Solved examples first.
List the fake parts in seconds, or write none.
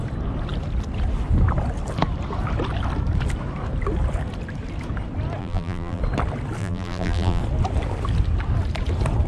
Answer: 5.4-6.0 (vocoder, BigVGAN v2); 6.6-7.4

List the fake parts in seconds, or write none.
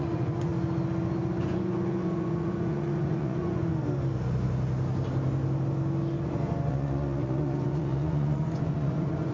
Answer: 0.0-0.5 (vocoder, Vocos); 1.4-3.7; 6.7-9.3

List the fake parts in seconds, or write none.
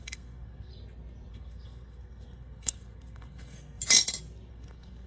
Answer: 0.0-0.7 (codec, SNAC); 1.3-3.8; 4.5-5.1